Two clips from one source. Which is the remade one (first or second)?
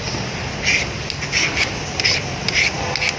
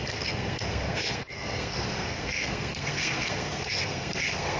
second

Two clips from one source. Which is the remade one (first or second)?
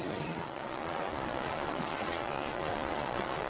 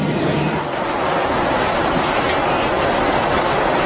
first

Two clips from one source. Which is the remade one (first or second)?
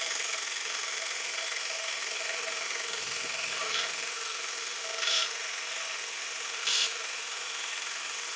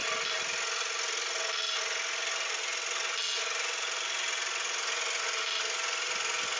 first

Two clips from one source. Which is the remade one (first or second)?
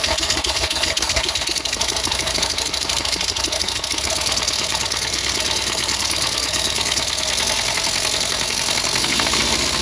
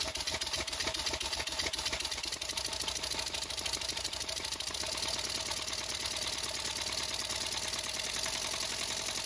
first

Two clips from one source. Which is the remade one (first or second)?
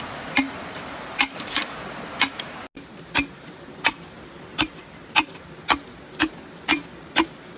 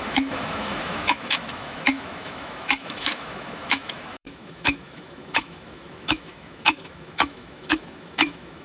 second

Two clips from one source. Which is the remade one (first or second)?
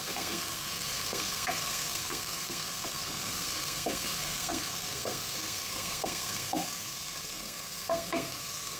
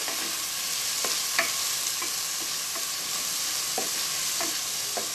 first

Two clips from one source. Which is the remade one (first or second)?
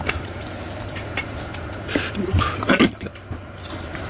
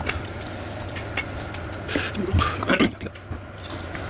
first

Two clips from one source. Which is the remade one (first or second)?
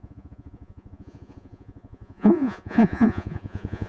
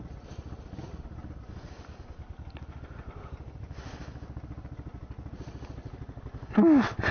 first